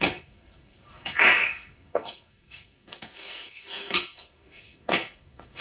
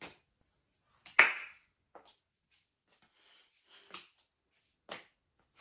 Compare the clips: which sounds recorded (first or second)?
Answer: second